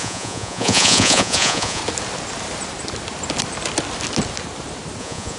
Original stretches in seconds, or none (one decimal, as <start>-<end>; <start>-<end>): 1.8-5.0